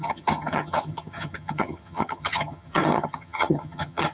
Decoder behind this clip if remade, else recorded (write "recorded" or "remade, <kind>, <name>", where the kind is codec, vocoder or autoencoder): remade, vocoder, HiFi-GAN